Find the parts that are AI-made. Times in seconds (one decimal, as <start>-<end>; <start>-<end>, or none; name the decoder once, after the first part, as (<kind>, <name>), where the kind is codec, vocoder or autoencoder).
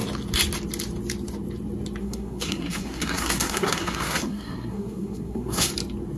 2.0-5.7 (codec, SNAC)